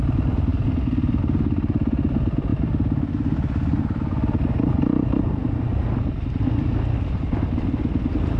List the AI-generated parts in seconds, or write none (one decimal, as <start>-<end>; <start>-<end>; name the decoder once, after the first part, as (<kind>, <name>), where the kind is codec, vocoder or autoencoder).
none